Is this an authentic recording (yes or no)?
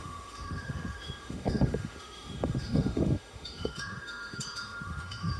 no